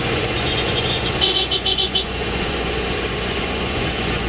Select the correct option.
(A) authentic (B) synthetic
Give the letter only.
B